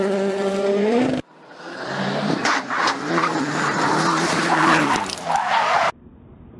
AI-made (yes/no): yes